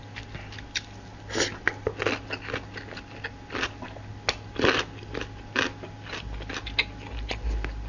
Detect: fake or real real